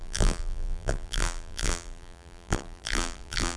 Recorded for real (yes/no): no